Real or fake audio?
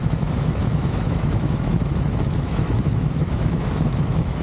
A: fake